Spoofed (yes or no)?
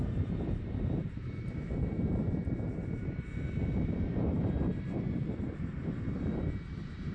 yes